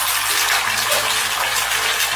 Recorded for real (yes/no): yes